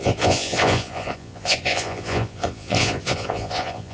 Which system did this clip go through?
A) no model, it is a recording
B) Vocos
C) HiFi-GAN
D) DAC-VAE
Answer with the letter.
B